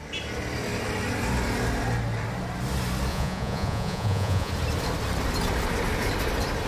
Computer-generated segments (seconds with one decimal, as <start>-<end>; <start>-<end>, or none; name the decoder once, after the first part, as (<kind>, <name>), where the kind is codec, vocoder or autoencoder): 3.1-4.5 (vocoder, Vocos)